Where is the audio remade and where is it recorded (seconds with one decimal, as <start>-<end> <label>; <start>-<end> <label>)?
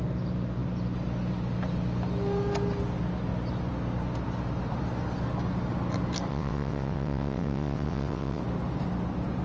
0.0-6.3 recorded; 6.3-8.4 remade; 8.4-9.4 recorded